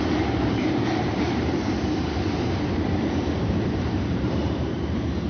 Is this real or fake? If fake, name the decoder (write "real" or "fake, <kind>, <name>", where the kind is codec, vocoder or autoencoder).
fake, vocoder, BigVGAN v2